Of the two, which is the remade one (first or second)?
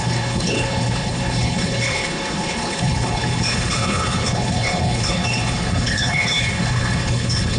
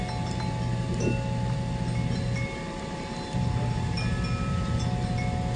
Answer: first